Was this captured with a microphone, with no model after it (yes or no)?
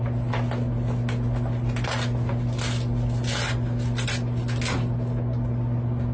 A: yes